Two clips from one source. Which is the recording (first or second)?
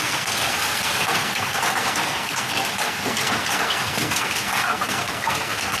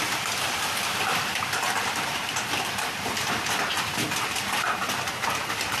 second